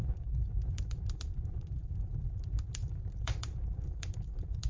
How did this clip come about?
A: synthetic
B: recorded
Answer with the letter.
A